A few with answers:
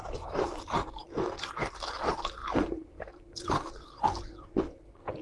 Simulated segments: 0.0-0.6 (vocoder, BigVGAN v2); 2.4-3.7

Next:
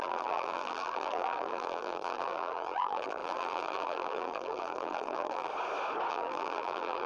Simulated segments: 0.0-5.5 (vocoder, BigVGAN v2); 6.1-7.1

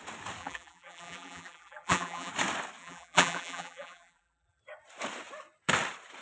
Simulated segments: 0.4-2.3 (vocoder, BigVGAN v2); 2.8-4.6

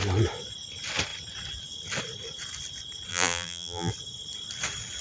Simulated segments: 3.1-3.9 (vocoder, BigVGAN v2)

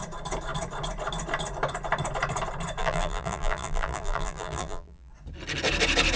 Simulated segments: 2.8-5.1 (vocoder, BigVGAN v2)

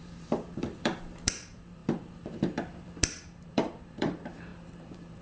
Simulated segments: 0.0-5.2 (vocoder, BigVGAN v2)